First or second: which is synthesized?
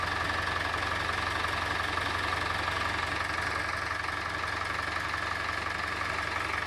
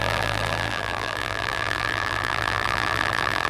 second